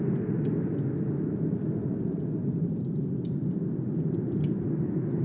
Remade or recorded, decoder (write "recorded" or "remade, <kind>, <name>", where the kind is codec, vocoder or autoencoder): recorded